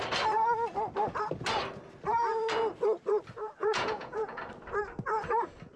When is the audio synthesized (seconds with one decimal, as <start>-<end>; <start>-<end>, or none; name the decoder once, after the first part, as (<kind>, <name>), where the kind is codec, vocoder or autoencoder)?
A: 3.6-4.4 (vocoder, Vocos)